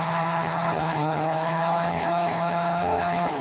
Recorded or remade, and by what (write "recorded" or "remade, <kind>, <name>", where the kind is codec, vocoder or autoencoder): remade, codec, HILCodec